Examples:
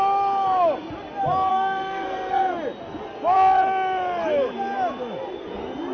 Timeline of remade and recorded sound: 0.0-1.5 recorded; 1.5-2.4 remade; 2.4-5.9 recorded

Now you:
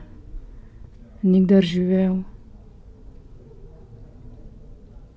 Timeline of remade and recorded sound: 0.0-5.2 recorded